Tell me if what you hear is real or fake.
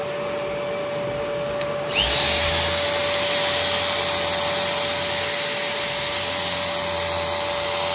real